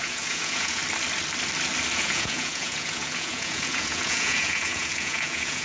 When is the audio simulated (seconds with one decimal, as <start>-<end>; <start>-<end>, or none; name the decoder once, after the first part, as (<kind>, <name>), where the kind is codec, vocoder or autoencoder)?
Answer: 0.0-0.8 (vocoder, Vocos); 1.9-5.6